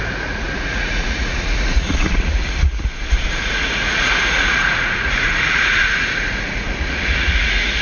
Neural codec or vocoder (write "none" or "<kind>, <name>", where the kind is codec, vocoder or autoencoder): vocoder, Vocos